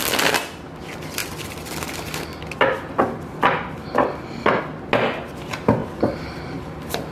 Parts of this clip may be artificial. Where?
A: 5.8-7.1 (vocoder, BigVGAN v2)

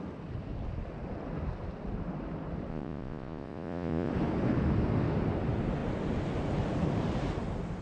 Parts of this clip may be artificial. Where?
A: 2.7-4.1 (vocoder, Vocos)

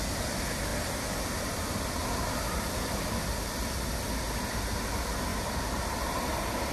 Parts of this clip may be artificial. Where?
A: 2.0-2.9 (vocoder, BigVGAN v2); 5.3-6.2

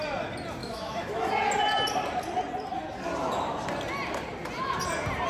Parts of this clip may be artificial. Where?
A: 0.6-1.3 (autoencoder, DAC-VAE)